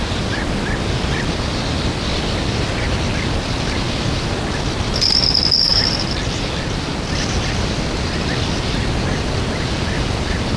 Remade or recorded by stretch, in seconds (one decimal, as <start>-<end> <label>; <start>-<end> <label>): 0.0-10.6 recorded